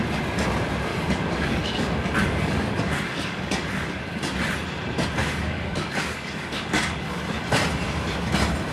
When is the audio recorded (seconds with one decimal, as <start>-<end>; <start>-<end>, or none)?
0.0-0.9; 4.2-5.2; 7.2-8.7